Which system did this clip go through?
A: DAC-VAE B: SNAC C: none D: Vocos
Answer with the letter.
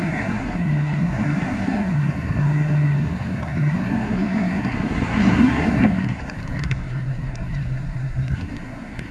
B